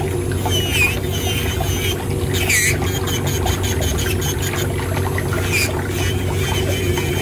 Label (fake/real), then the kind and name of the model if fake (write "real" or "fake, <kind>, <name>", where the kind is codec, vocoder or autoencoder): real